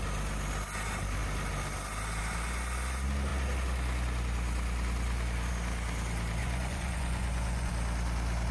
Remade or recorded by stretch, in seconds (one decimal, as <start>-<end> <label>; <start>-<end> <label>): 0.0-6.4 recorded; 6.4-7.7 remade; 7.7-8.5 recorded